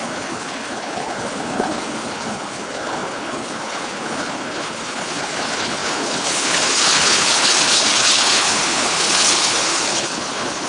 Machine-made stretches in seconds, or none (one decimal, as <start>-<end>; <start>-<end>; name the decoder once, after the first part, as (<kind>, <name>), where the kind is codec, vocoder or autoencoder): 0.0-10.7 (codec, HILCodec)